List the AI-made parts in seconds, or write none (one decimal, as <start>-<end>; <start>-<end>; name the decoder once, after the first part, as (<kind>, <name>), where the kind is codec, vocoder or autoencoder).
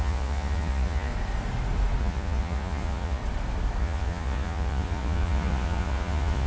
0.0-1.1 (vocoder, Vocos); 2.0-3.2; 3.8-6.5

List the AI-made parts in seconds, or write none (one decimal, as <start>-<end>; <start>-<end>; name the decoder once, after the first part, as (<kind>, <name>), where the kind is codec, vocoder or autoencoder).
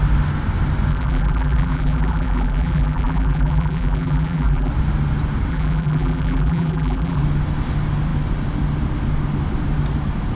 0.9-4.7 (vocoder, BigVGAN v2); 5.5-7.2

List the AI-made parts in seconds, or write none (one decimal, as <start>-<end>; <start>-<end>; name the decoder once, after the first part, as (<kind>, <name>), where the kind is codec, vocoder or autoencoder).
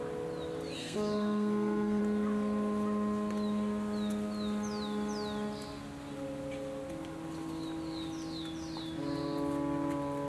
0.8-2.0 (codec, SNAC)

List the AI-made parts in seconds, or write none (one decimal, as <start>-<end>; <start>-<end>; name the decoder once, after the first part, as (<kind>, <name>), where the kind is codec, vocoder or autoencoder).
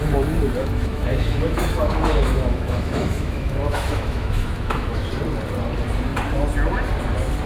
0.6-5.1 (autoencoder, DAC-VAE)